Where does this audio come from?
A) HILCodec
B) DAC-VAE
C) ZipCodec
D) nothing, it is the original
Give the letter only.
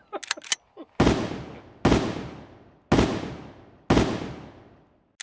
D